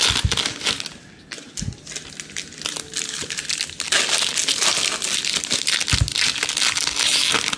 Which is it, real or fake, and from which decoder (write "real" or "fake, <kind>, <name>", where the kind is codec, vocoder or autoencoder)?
real